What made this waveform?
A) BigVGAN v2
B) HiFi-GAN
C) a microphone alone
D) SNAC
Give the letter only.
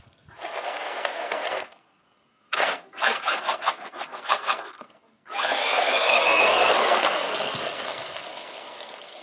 D